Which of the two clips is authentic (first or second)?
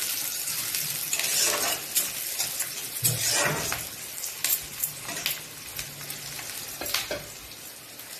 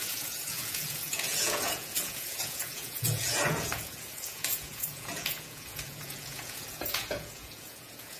first